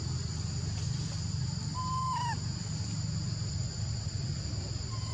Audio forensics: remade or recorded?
recorded